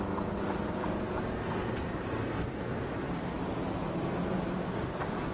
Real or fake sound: real